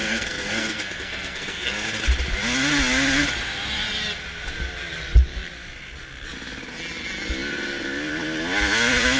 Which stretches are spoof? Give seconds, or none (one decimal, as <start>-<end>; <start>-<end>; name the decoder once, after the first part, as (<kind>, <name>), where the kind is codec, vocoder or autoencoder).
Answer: 0.0-2.0 (codec, SNAC)

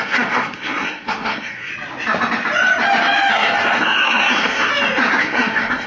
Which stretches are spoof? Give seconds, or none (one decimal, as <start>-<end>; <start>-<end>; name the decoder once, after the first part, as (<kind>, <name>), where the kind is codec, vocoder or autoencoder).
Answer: 0.0-1.7 (codec, SNAC); 3.3-4.7; 5.2-5.9

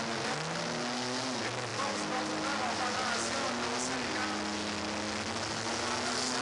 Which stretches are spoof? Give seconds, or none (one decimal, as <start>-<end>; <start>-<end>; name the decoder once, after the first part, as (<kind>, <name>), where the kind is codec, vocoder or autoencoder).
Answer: none

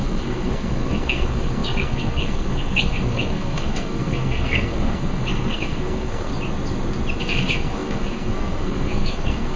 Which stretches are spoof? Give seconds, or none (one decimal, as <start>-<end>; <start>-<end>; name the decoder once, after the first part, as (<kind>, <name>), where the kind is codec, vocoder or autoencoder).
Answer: 0.0-6.3 (codec, SNAC); 7.2-9.6

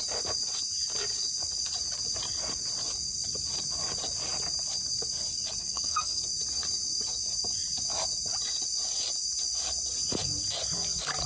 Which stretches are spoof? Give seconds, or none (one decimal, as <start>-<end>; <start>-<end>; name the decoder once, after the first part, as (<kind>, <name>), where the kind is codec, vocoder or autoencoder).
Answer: 5.6-6.2 (codec, SNAC)

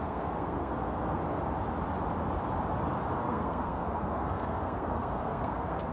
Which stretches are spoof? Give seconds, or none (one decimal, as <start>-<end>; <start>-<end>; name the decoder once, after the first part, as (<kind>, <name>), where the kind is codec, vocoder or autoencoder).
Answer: 0.0-1.2 (codec, SNAC); 3.2-5.9

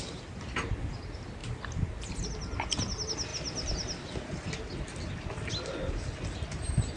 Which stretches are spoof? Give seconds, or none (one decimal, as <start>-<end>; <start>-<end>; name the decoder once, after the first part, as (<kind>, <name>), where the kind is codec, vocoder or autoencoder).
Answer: none